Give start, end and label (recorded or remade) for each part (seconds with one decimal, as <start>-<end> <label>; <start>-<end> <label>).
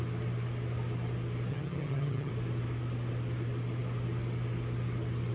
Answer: 0.0-1.5 recorded; 1.5-2.3 remade; 2.3-5.3 recorded